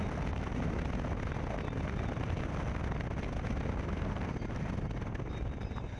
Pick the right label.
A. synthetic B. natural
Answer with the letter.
B